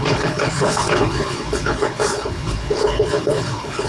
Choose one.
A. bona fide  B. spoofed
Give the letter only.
B